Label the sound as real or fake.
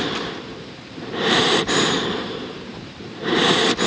fake